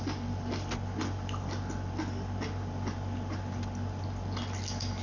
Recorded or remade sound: recorded